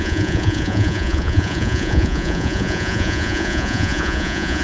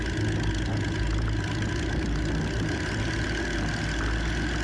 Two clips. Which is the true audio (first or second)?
second